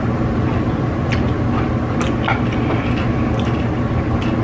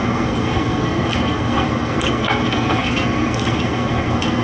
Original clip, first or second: first